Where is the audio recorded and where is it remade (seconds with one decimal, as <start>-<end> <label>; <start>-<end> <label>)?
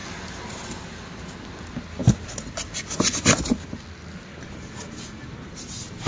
0.0-6.1 recorded